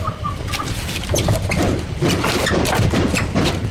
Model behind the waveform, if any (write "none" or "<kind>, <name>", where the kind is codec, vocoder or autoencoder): none